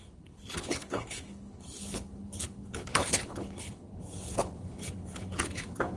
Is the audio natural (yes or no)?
no